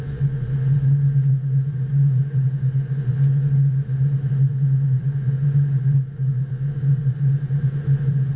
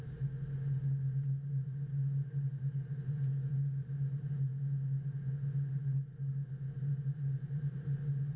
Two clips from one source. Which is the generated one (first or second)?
first